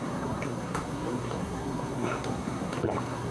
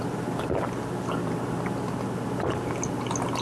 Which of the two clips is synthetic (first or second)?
first